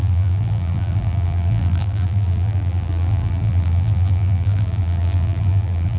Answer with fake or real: fake